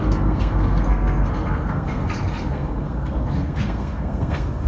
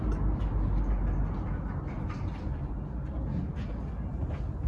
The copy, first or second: first